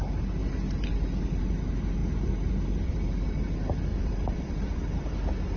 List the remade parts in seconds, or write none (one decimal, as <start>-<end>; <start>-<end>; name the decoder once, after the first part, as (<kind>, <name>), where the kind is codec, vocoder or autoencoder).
2.0-3.4 (vocoder, BigVGAN v2); 3.9-5.1

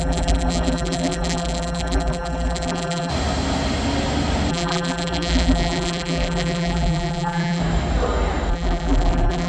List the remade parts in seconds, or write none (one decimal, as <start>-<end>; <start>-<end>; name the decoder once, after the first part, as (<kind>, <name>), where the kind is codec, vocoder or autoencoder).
0.0-3.1 (vocoder, BigVGAN v2); 4.5-7.6; 8.5-9.5

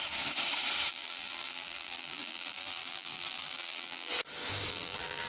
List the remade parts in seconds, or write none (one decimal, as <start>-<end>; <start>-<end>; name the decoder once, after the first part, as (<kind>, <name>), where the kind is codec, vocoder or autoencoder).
0.9-4.1 (vocoder, BigVGAN v2); 4.7-5.3

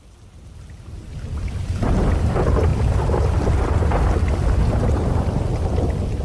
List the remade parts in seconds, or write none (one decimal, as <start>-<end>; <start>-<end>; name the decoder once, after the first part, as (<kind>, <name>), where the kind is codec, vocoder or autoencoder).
none

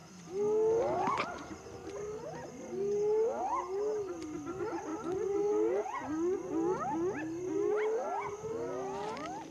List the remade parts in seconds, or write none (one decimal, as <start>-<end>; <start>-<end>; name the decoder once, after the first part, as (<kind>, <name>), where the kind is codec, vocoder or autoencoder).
none

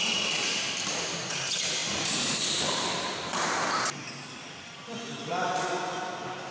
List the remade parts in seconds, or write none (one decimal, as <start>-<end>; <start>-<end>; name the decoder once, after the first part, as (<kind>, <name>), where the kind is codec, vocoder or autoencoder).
0.0-5.3 (vocoder, BigVGAN v2)

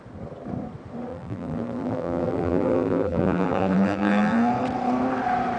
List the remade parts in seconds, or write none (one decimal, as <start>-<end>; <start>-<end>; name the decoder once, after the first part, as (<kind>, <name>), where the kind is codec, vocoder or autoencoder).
1.1-4.5 (vocoder, BigVGAN v2)

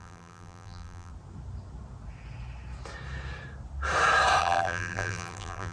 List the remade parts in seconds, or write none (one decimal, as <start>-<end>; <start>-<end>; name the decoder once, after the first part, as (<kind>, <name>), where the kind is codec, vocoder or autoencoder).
0.0-1.1 (vocoder, BigVGAN v2); 4.4-5.7